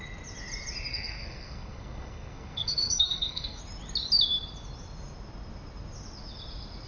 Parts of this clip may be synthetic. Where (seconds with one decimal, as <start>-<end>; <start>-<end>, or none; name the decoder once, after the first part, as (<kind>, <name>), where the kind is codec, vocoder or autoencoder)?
0.9-3.6 (codec, SNAC)